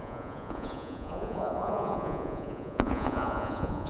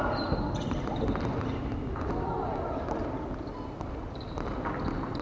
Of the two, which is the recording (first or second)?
second